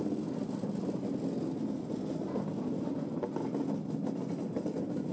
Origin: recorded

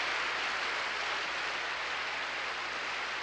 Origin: recorded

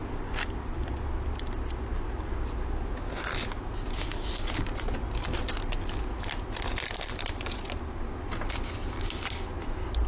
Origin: recorded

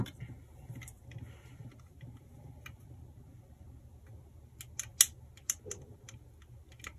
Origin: recorded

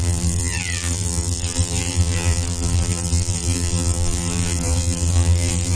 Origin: remade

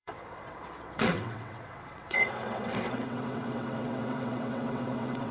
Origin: remade